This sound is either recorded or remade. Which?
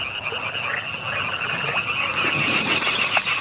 recorded